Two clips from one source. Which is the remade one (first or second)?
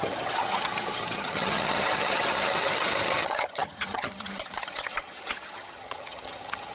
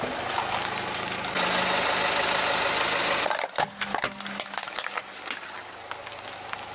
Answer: first